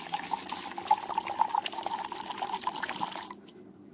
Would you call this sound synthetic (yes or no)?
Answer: no